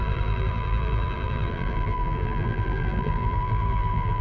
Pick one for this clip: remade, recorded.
remade